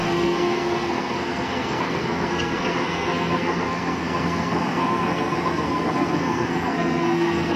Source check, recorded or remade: remade